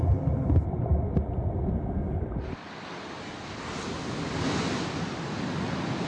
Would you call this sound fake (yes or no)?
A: no